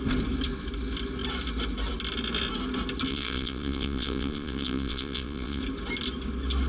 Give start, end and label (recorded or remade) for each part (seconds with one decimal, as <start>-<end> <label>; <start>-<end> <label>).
0.0-3.1 recorded; 3.1-5.6 remade; 5.6-6.7 recorded